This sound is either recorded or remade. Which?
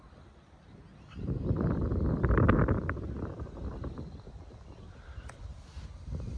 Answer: recorded